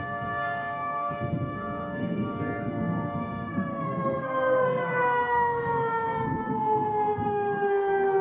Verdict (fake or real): fake